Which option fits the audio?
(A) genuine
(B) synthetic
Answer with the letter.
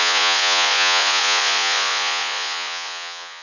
B